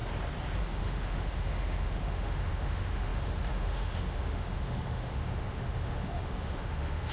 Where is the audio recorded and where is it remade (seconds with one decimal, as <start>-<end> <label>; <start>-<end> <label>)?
0.0-0.6 recorded; 0.6-7.1 remade